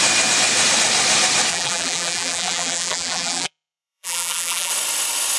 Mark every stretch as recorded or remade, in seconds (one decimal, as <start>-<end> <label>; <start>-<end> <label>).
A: 0.0-1.5 recorded; 1.5-4.7 remade; 4.7-5.4 recorded

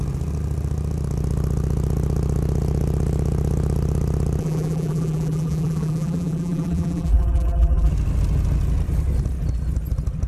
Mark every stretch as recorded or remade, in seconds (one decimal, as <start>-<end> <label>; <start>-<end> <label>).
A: 0.0-4.4 recorded; 4.4-7.9 remade; 7.9-10.3 recorded

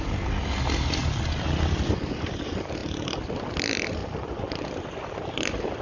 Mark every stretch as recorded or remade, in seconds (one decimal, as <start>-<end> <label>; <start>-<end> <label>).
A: 0.0-1.0 recorded; 1.0-2.3 remade; 2.3-4.0 recorded; 4.0-4.8 remade; 4.8-5.8 recorded

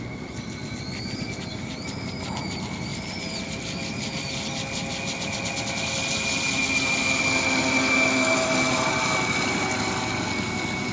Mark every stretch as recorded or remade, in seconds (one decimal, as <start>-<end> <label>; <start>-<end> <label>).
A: 0.0-10.9 recorded

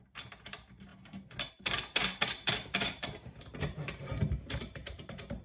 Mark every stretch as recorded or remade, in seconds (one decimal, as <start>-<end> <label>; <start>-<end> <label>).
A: 0.0-0.9 remade; 0.9-1.5 recorded; 1.5-5.4 remade